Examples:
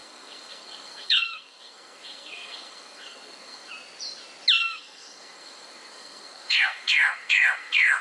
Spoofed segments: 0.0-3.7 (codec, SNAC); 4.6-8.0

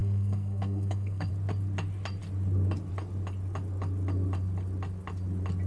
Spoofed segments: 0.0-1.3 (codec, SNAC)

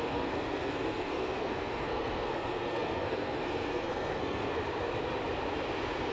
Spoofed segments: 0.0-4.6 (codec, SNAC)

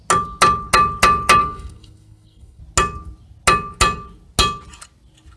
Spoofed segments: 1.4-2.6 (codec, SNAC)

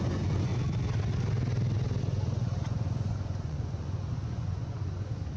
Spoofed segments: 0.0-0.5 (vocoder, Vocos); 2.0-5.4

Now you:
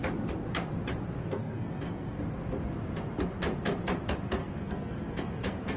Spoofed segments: 1.2-2.2 (codec, SNAC); 4.4-5.8

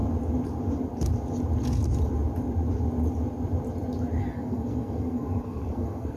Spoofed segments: 4.2-6.2 (codec, SNAC)